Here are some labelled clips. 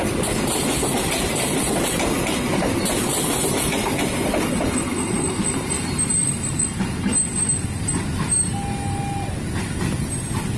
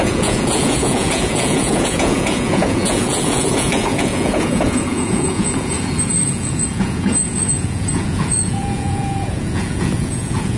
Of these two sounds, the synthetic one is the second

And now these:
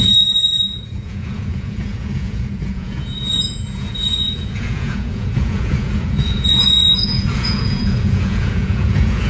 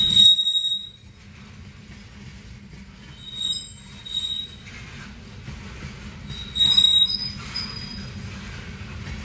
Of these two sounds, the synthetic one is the first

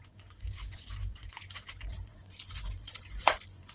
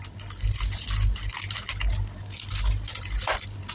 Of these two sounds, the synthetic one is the first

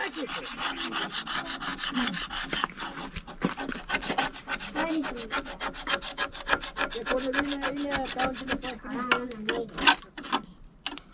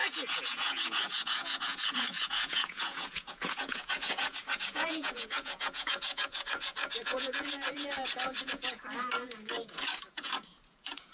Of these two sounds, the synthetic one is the second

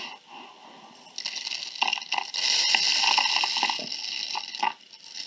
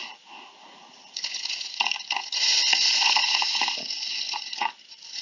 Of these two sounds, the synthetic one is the second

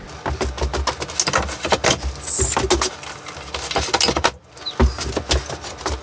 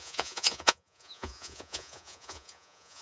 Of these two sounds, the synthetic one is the second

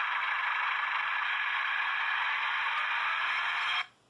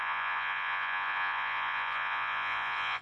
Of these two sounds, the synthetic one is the second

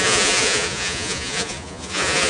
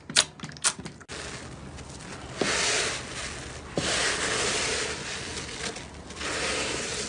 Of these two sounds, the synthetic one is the first